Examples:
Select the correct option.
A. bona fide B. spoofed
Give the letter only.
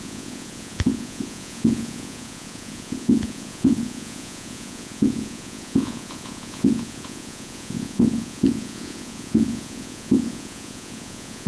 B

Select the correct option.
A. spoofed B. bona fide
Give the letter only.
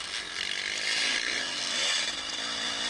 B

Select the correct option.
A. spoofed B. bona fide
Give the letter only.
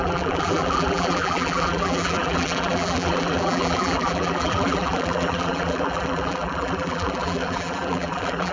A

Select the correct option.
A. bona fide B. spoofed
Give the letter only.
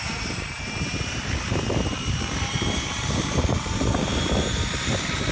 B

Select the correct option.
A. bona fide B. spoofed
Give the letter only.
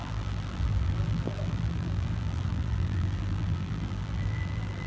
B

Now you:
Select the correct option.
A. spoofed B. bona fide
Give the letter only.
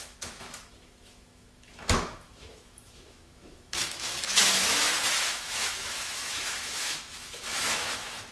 A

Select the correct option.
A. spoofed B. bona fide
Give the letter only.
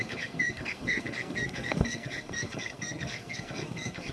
A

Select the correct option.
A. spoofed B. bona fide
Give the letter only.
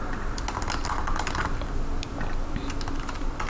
B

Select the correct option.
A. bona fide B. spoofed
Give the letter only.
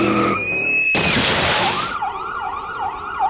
B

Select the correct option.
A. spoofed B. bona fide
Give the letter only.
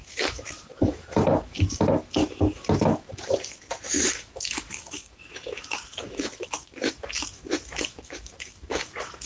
A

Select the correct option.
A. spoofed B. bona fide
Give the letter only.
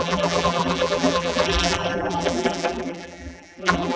A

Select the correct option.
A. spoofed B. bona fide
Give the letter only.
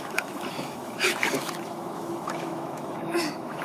A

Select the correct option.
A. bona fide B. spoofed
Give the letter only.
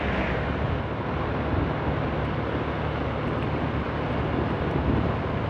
A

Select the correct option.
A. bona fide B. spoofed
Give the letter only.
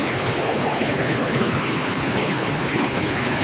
B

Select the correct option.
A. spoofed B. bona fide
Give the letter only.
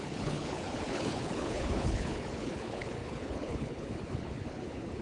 A